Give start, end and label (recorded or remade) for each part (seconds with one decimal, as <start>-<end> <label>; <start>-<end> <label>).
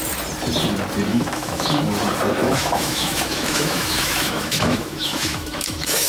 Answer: 0.0-1.1 recorded; 1.1-1.8 remade; 1.8-2.4 recorded; 2.4-6.1 remade